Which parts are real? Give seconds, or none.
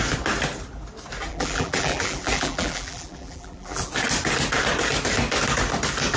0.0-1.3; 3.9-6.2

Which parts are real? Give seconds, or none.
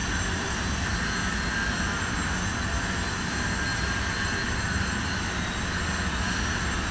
0.9-3.7; 5.5-6.9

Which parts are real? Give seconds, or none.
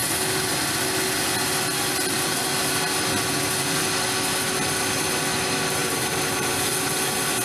0.0-5.8; 6.7-7.4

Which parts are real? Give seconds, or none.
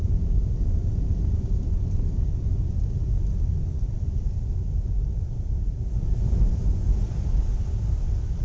0.0-8.4